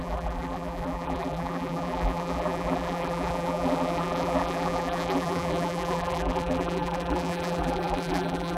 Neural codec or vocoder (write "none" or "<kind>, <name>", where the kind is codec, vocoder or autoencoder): vocoder, BigVGAN v2